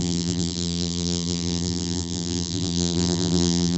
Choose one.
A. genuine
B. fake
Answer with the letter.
B